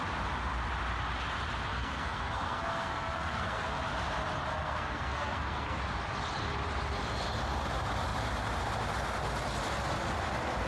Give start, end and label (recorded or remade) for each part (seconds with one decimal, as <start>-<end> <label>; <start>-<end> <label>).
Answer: 0.0-1.7 recorded; 1.7-3.8 remade; 3.8-4.5 recorded; 4.5-5.8 remade; 5.8-10.7 recorded

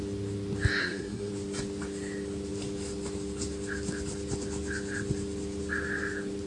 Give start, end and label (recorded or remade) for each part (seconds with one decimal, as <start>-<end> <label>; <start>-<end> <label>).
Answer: 0.0-0.8 recorded; 0.8-1.3 remade; 1.3-6.5 recorded

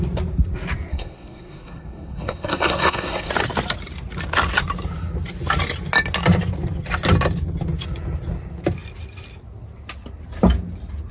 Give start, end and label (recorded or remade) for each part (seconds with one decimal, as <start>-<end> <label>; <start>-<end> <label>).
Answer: 0.0-0.9 recorded; 0.9-3.3 remade; 3.3-11.1 recorded

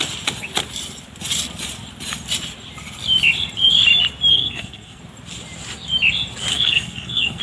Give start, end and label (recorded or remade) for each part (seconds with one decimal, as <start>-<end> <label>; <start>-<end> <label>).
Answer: 0.0-4.3 recorded; 4.3-5.0 remade; 5.0-6.5 recorded; 6.5-7.4 remade